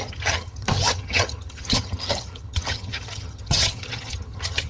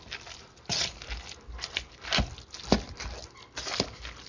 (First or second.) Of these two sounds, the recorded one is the second